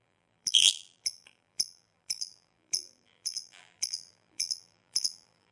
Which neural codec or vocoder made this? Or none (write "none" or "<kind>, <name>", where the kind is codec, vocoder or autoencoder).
vocoder, BigVGAN v2